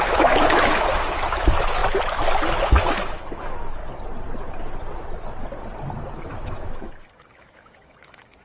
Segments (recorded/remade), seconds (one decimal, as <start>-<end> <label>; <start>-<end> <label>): 0.0-1.8 remade; 1.8-2.6 recorded; 2.6-3.8 remade; 3.8-6.2 recorded; 6.2-8.4 remade

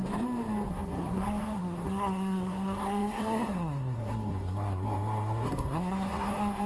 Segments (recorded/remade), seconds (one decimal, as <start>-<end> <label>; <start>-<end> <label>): 0.0-0.7 recorded; 0.7-6.7 remade

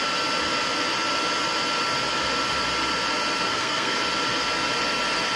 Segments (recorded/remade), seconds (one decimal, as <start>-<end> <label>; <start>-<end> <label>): 0.0-3.5 recorded; 3.5-4.0 remade; 4.0-5.4 recorded

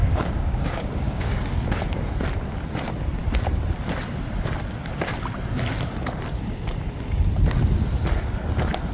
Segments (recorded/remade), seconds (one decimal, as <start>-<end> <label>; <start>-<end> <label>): 0.0-1.5 remade; 1.5-8.9 recorded

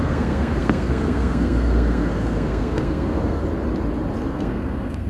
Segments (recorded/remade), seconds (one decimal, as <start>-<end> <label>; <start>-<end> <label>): 0.0-3.4 remade; 3.4-4.3 recorded; 4.3-5.1 remade

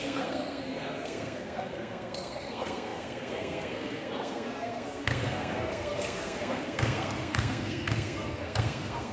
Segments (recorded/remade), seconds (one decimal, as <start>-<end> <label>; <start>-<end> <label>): 0.0-9.1 remade

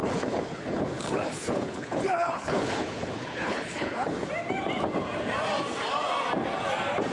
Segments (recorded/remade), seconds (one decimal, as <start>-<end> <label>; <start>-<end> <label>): 0.0-4.3 remade; 4.3-7.1 recorded

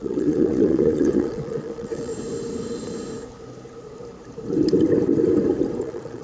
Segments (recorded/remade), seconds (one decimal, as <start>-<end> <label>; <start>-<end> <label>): 0.0-2.1 remade; 2.1-5.8 recorded; 5.8-6.2 remade